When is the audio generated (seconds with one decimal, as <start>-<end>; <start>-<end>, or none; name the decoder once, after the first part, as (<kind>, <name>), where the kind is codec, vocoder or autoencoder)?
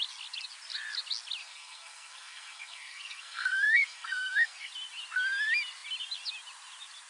1.4-4.7 (codec, SNAC)